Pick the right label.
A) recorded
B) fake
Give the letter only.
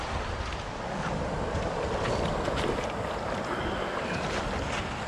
A